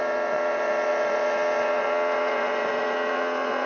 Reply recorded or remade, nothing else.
remade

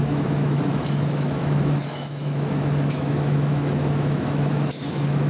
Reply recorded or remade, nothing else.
remade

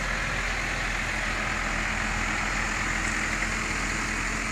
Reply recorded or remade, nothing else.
recorded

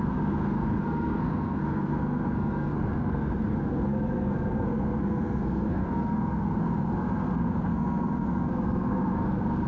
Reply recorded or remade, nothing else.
remade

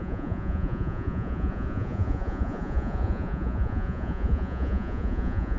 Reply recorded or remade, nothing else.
remade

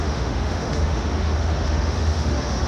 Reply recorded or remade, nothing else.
remade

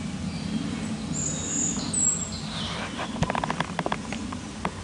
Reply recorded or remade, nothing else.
recorded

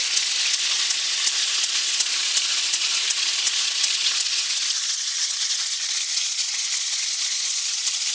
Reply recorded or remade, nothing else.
remade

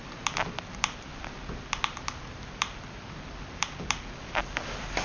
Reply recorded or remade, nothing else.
recorded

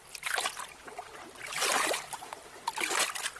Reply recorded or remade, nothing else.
recorded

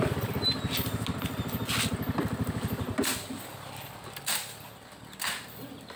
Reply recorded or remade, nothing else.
recorded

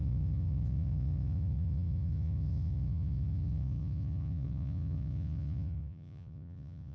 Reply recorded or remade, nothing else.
remade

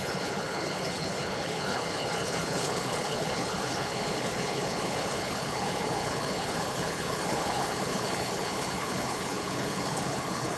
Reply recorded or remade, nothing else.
remade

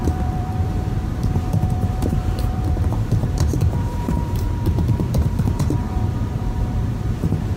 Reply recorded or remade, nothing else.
remade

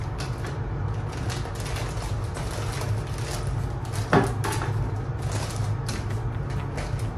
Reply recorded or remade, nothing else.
recorded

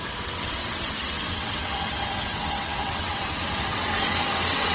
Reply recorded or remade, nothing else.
remade